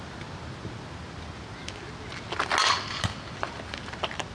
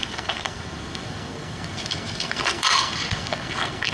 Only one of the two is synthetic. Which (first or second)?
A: second